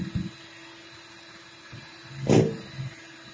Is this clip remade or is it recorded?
recorded